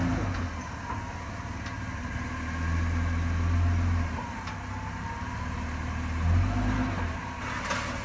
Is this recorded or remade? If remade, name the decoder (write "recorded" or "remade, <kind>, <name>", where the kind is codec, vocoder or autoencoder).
recorded